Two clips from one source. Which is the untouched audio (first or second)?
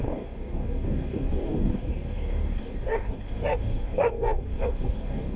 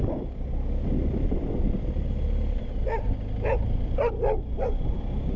second